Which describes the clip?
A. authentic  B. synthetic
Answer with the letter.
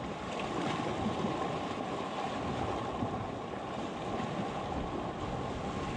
A